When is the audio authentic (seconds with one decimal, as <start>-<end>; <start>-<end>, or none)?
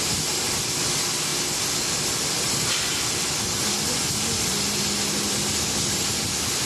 0.0-6.7